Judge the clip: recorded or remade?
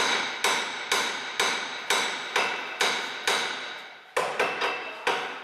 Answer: recorded